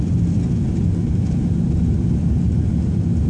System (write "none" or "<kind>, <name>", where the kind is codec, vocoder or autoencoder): none